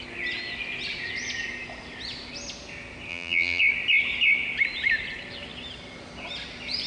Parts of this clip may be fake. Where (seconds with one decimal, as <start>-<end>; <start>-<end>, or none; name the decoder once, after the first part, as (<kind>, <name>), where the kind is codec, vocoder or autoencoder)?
3.1-3.6 (vocoder, BigVGAN v2)